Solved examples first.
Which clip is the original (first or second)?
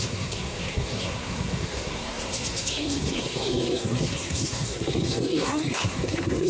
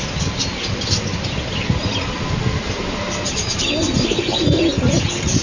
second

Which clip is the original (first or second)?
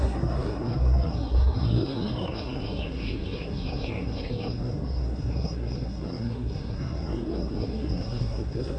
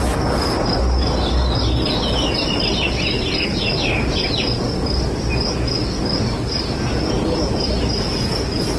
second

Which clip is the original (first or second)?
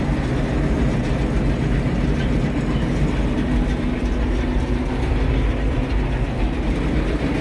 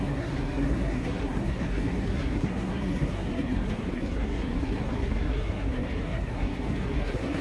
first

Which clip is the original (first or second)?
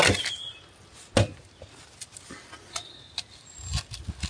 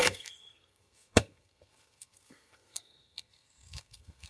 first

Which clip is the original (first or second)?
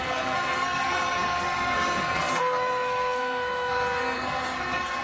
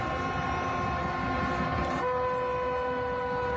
second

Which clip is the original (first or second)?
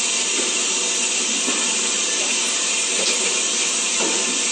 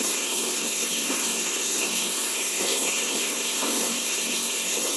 first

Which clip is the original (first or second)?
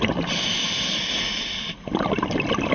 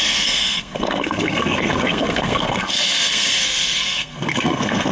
first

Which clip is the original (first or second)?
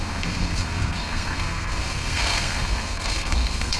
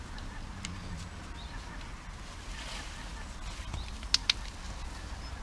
second